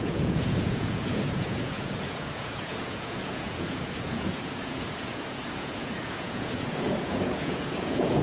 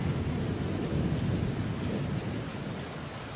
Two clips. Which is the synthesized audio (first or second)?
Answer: first